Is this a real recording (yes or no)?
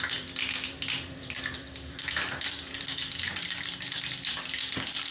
yes